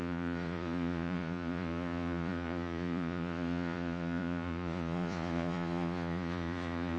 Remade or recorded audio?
remade